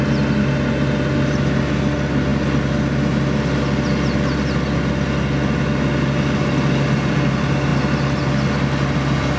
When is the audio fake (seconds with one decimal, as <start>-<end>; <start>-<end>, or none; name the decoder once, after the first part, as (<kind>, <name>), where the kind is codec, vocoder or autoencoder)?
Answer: none